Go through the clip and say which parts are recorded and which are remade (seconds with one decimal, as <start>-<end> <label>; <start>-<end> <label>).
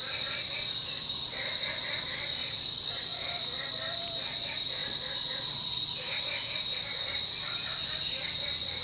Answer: 0.0-8.8 remade